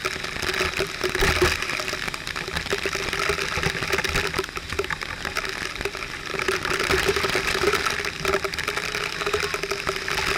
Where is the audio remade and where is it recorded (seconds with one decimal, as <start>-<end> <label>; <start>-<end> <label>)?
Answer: 0.0-6.3 recorded; 6.3-7.8 remade; 7.8-10.4 recorded